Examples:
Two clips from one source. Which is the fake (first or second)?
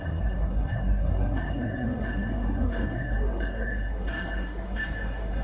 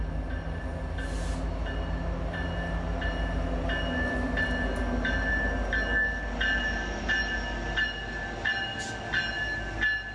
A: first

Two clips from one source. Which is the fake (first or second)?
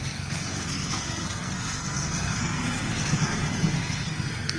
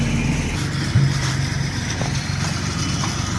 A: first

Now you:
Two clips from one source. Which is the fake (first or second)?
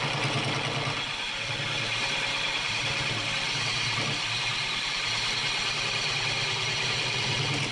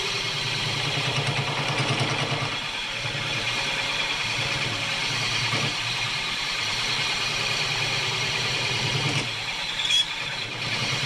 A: second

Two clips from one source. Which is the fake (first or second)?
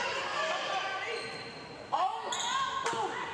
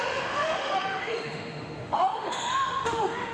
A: second